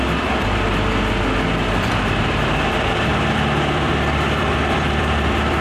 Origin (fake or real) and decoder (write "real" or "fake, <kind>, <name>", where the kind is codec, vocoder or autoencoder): fake, vocoder, BigVGAN v2